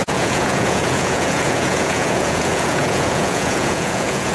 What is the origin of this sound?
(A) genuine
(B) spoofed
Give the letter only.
B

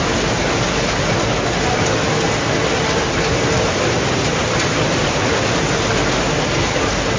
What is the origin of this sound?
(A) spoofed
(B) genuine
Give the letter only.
B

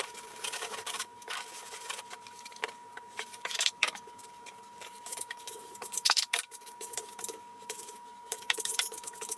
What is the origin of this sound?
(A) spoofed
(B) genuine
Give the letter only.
A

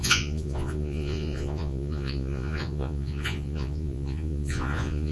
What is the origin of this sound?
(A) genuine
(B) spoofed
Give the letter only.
B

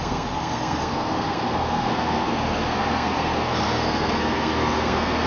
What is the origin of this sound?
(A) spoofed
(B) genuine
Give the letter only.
A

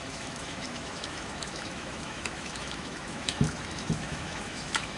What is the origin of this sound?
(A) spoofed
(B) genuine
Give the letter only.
A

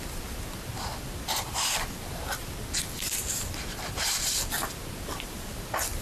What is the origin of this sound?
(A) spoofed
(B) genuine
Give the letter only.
A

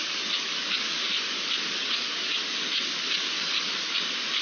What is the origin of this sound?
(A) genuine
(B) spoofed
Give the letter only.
B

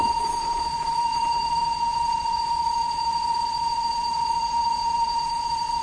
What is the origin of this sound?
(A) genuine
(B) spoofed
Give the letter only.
B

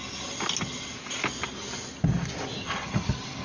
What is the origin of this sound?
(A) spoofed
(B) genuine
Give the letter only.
B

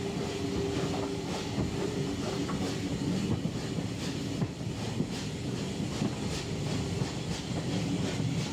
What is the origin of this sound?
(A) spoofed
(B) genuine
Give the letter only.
B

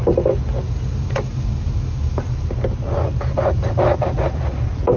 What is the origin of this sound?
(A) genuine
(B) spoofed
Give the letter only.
A